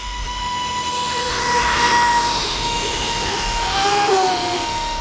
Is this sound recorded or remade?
remade